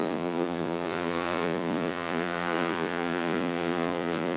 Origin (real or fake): fake